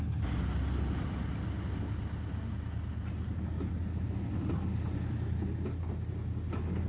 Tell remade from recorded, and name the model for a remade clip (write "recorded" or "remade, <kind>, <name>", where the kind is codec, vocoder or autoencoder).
recorded